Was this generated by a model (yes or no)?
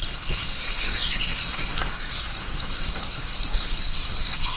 yes